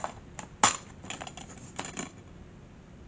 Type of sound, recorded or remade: recorded